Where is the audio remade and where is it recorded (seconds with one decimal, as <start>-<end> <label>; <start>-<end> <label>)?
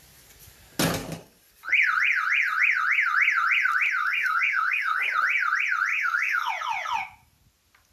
0.0-1.0 recorded; 1.0-1.5 remade; 1.5-4.0 recorded; 4.0-5.1 remade; 5.1-5.9 recorded; 5.9-6.5 remade; 6.5-7.9 recorded